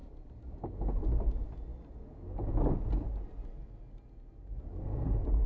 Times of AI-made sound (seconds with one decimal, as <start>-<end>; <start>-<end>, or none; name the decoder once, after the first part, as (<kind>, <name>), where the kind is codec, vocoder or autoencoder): none